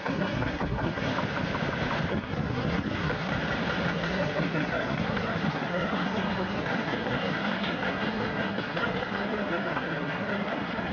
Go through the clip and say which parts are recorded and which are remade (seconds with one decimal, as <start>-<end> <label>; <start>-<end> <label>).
0.0-1.1 remade; 1.1-2.1 recorded; 2.1-3.3 remade; 3.3-3.9 recorded; 3.9-10.9 remade